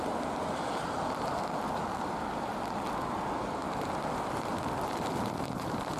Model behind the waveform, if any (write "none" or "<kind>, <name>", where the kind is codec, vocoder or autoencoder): none